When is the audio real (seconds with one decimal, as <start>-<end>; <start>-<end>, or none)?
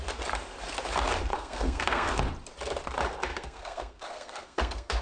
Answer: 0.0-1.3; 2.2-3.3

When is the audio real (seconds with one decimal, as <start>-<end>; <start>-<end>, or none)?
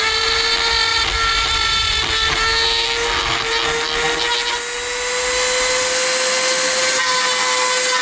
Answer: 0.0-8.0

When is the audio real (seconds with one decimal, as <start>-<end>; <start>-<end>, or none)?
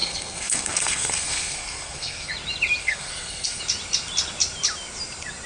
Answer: 2.3-2.8; 3.6-5.5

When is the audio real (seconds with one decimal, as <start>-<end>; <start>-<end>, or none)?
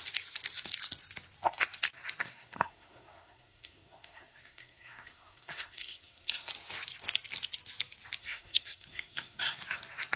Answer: 0.0-2.2; 6.5-8.2; 9.6-10.2